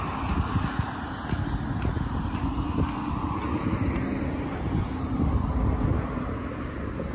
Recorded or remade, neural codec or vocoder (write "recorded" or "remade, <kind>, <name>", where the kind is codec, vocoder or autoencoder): recorded